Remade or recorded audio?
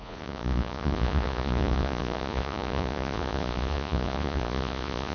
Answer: remade